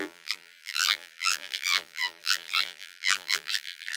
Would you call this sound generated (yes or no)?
yes